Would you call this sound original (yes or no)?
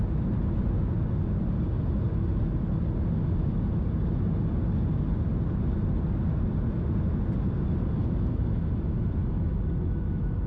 yes